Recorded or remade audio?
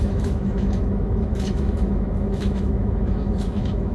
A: remade